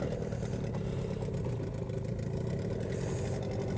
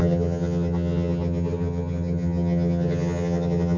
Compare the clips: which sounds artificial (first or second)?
second